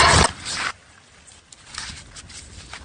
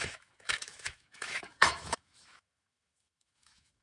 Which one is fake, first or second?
second